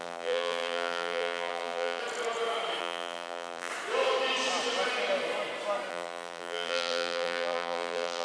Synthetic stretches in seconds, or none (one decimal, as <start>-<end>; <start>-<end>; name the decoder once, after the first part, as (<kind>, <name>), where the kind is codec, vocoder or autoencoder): 0.0-2.0 (vocoder, BigVGAN v2); 2.8-3.7; 5.9-8.2